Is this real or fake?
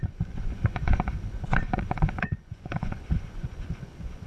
fake